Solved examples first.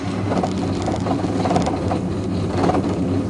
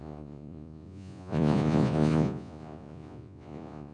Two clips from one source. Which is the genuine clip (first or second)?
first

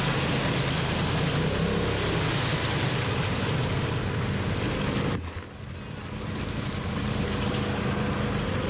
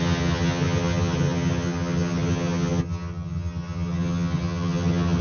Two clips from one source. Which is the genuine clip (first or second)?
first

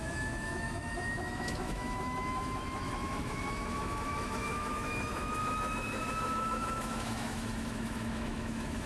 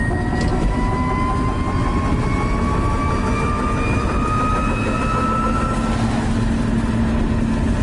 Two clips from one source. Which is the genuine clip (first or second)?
second